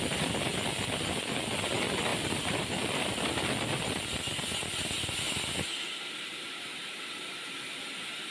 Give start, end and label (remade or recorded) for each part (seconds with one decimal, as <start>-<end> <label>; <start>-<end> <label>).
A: 0.0-2.1 recorded; 2.1-3.3 remade; 3.3-6.3 recorded; 6.3-8.3 remade